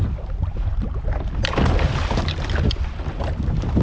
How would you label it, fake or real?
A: real